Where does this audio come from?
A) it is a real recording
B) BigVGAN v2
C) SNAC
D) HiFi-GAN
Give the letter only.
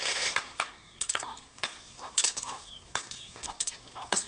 C